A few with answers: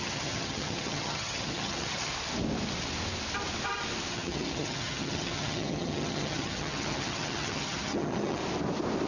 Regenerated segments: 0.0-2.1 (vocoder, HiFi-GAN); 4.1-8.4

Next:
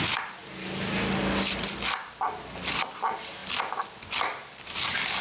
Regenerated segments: none

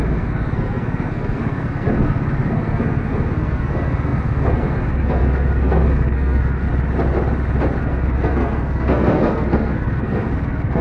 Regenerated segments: 0.0-6.7 (codec, SNAC); 7.8-10.8

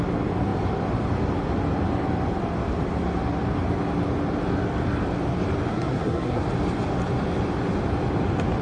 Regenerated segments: 5.7-6.4 (codec, SNAC)

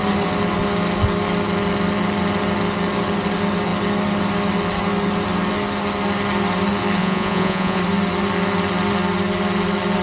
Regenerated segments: 7.0-7.8 (vocoder, Vocos)

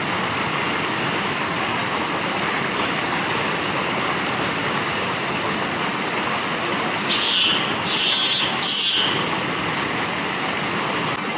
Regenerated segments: none